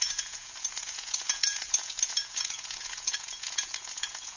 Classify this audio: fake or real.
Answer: fake